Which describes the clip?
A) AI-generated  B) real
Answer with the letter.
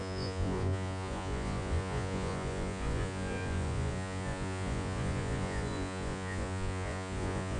A